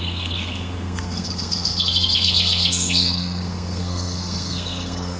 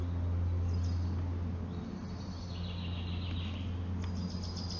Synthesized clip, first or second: first